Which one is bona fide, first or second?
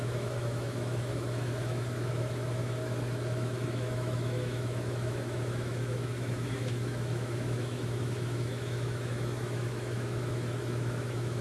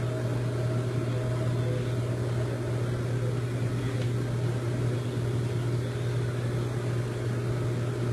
second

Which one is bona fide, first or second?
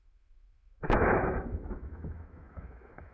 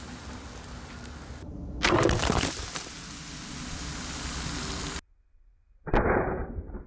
second